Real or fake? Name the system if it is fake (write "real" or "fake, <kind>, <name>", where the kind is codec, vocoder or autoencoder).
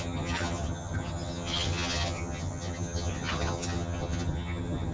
fake, vocoder, HiFi-GAN